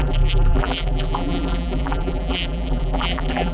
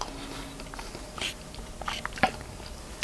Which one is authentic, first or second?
second